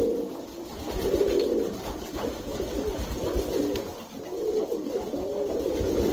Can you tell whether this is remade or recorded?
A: recorded